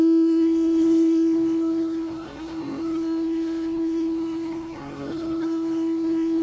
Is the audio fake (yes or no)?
yes